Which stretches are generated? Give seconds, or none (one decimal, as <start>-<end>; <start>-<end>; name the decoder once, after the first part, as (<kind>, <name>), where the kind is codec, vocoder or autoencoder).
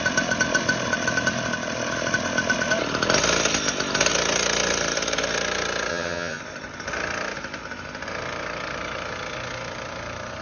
5.9-6.4 (vocoder, HiFi-GAN)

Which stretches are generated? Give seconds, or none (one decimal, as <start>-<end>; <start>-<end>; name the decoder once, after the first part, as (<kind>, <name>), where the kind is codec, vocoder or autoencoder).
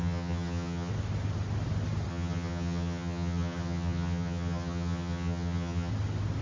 0.0-0.9 (vocoder, HiFi-GAN); 2.1-5.9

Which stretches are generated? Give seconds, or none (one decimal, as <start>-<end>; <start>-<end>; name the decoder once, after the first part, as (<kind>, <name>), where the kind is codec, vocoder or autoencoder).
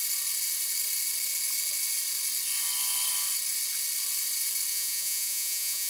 4.7-5.9 (vocoder, Vocos)